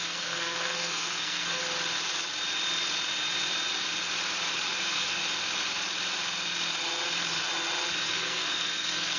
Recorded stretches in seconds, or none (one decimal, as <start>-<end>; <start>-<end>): 1.6-4.8; 5.2-8.1